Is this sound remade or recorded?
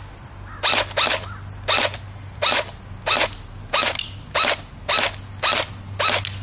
recorded